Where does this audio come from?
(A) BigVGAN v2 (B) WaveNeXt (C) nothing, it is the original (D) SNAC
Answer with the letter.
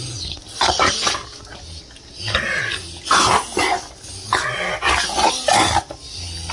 C